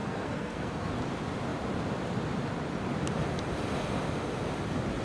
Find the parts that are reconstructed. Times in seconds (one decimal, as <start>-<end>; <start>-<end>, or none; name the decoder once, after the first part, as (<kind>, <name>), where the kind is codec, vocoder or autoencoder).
0.0-0.9 (codec, SNAC)